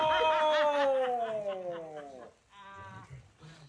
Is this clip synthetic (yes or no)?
no